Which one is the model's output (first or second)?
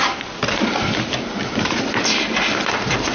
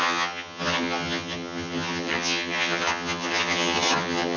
second